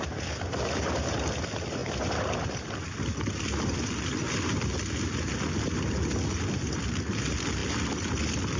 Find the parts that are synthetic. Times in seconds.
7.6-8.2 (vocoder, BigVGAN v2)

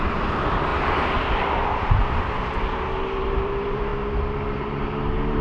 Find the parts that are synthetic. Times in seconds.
0.0-0.7 (vocoder, BigVGAN v2); 3.2-3.9; 4.5-5.4

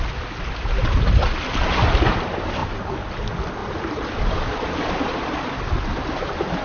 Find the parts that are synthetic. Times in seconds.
3.6-4.7 (vocoder, BigVGAN v2)

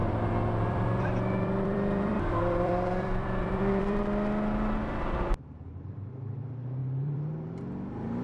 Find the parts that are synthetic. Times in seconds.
0.0-4.0 (vocoder, BigVGAN v2); 6.8-7.6